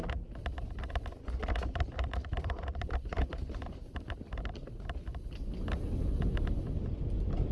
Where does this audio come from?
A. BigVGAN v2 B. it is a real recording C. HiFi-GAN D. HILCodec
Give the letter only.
B